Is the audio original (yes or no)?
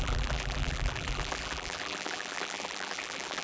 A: no